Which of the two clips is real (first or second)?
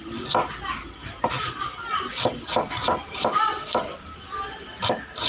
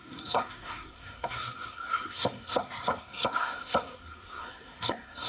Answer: first